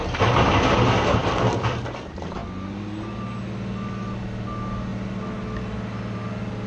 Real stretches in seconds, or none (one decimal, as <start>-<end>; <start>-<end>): 0.0-6.7